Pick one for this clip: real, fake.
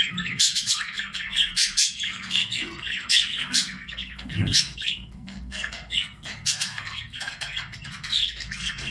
fake